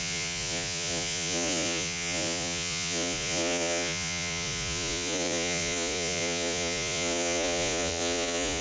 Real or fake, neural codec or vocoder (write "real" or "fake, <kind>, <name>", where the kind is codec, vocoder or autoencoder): fake, vocoder, Vocos